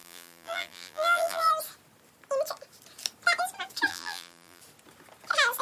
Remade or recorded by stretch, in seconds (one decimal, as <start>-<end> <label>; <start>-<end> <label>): 0.0-1.5 remade; 1.5-3.9 recorded; 3.9-4.6 remade; 4.6-5.6 recorded